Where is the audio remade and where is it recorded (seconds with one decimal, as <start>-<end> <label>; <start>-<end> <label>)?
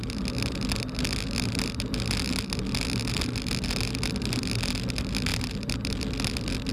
0.0-6.7 recorded